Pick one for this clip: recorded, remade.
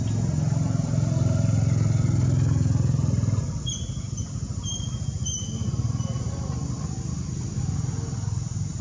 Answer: recorded